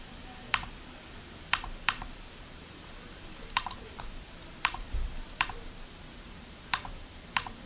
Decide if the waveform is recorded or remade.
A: remade